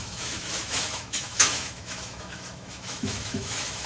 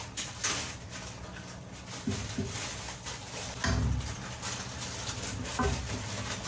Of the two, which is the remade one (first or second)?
first